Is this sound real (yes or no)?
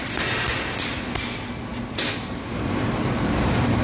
yes